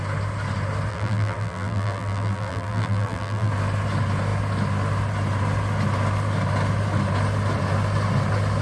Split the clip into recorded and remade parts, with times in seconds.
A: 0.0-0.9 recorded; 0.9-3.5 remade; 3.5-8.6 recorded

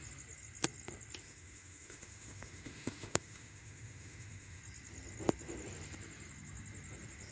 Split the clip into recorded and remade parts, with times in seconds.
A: 0.0-1.2 recorded; 1.2-4.6 remade; 4.6-7.3 recorded

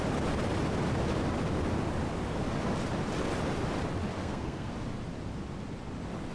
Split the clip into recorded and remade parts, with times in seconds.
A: 0.0-4.2 recorded; 4.2-4.7 remade; 4.7-6.3 recorded

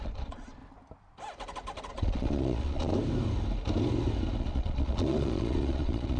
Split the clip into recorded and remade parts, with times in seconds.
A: 0.0-0.6 remade; 0.6-1.9 recorded; 1.9-2.9 remade; 2.9-4.4 recorded; 4.4-6.2 remade